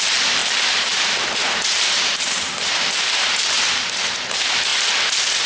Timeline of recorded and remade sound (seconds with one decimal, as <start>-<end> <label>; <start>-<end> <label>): 0.0-4.7 remade; 4.7-5.5 recorded